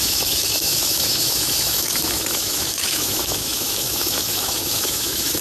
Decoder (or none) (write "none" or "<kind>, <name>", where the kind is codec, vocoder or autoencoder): autoencoder, DAC-VAE